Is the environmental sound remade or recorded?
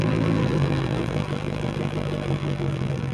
remade